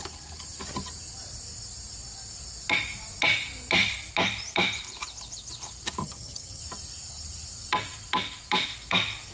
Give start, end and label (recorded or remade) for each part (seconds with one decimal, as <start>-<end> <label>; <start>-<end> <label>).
0.0-6.0 recorded; 6.0-6.6 remade; 6.6-9.3 recorded